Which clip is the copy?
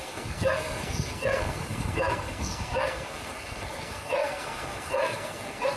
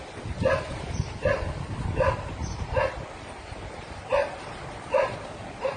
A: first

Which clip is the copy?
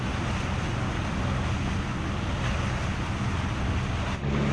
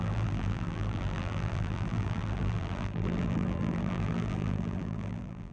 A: second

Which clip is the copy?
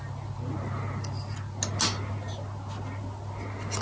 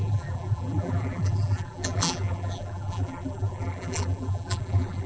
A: second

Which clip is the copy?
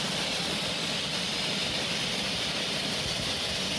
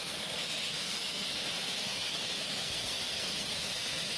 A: second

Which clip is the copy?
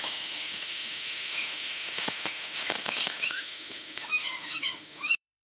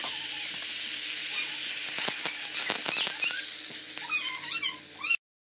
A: first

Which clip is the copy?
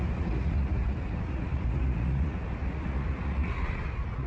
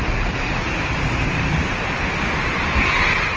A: first